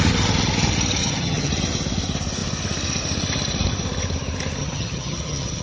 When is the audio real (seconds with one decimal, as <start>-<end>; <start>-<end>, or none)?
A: 0.0-1.0; 1.5-4.6